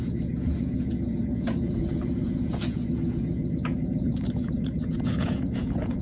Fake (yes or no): yes